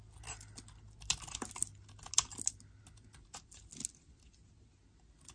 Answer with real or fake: real